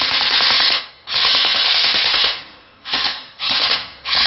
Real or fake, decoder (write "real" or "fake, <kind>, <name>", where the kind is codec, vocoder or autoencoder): fake, codec, SNAC